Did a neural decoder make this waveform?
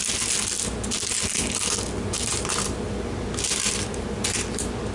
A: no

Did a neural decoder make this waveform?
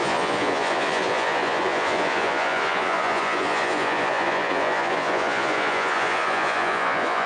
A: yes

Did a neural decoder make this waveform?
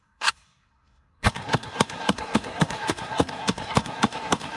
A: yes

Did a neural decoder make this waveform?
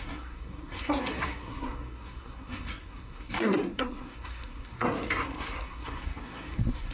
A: yes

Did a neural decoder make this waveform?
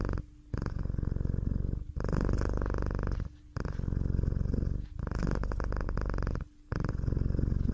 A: no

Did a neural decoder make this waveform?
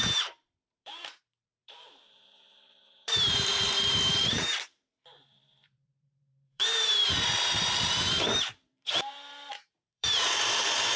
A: yes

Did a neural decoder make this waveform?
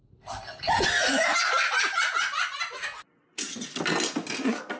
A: no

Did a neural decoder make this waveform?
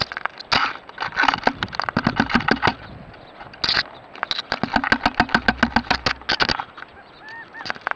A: no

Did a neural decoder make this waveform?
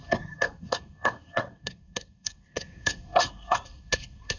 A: yes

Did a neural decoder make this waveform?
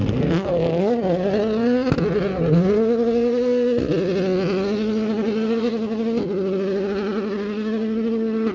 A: no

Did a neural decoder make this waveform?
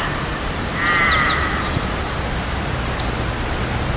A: yes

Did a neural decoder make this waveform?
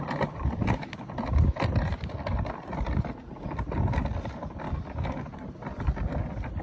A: no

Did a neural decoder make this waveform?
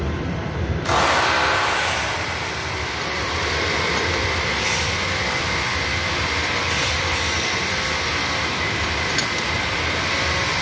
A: yes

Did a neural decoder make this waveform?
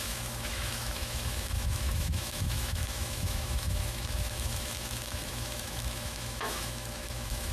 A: yes